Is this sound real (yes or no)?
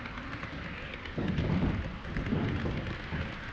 yes